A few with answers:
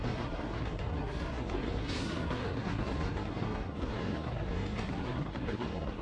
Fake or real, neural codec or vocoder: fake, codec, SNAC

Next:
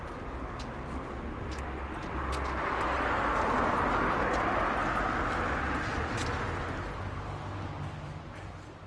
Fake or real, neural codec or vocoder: real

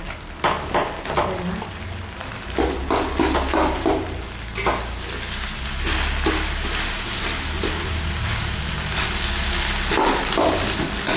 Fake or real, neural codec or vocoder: real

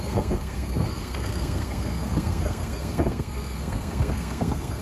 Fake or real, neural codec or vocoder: fake, codec, SNAC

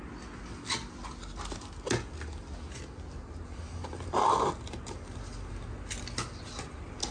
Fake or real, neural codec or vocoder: real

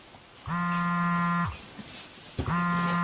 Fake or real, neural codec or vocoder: real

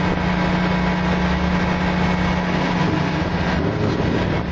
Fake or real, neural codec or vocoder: real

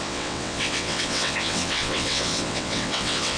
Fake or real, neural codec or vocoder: fake, vocoder, WaveNeXt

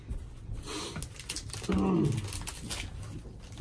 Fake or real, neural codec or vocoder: real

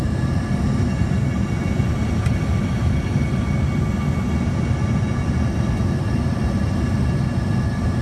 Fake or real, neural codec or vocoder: real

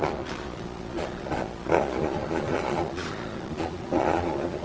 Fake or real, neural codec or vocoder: fake, vocoder, Vocos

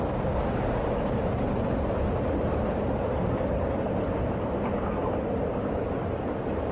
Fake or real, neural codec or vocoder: real